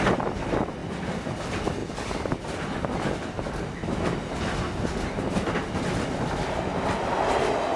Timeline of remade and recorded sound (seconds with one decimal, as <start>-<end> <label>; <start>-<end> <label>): 0.0-0.8 recorded; 0.8-1.4 remade; 1.4-7.8 recorded